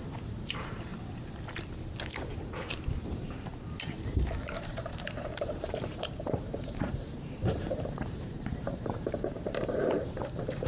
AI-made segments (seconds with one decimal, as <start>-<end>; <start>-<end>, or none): 0.0-0.9; 2.3-3.5; 4.5-10.7